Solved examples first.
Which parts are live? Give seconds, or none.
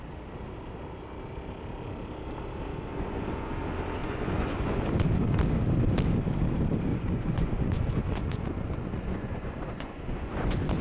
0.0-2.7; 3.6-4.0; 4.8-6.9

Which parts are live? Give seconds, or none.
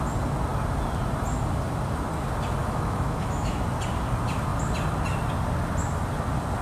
0.0-2.6; 3.6-6.6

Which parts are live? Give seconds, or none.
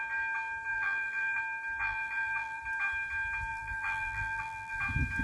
0.0-0.7; 1.4-1.8; 2.6-3.5; 4.8-5.2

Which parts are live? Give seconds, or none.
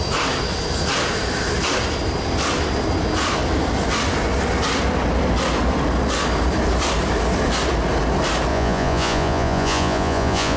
0.0-8.5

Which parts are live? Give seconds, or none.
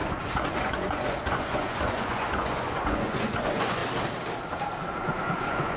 3.8-5.0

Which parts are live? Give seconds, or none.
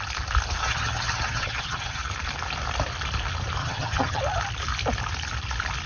0.0-0.6; 2.0-3.6; 4.2-5.9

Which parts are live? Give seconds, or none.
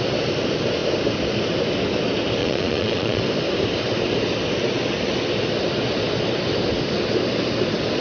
0.0-2.4; 3.2-8.0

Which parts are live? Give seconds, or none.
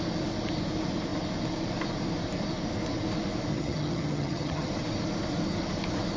0.0-3.5; 4.7-6.2